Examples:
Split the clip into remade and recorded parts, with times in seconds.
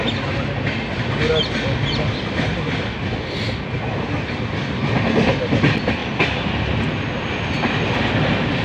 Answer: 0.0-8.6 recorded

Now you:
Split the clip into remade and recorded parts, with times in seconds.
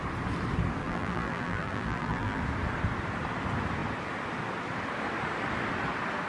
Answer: 0.0-0.8 recorded; 0.8-2.4 remade; 2.4-6.3 recorded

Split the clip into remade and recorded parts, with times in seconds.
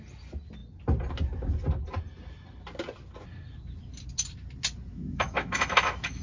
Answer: 0.0-4.9 recorded; 4.9-6.2 remade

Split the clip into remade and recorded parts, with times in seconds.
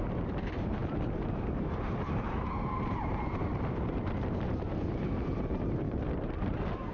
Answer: 0.0-6.9 remade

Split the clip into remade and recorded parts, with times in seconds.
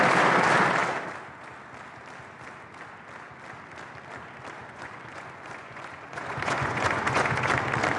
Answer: 0.0-4.6 recorded; 4.6-7.5 remade; 7.5-8.0 recorded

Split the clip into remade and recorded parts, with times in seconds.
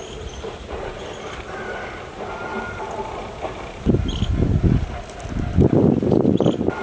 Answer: 0.0-6.8 recorded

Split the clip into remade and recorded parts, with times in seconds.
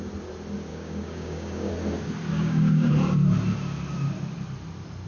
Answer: 0.0-0.7 recorded; 0.7-1.7 remade; 1.7-2.3 recorded; 2.3-2.9 remade; 2.9-5.1 recorded